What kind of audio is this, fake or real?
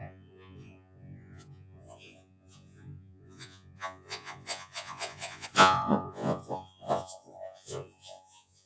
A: fake